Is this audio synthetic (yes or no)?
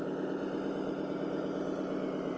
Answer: no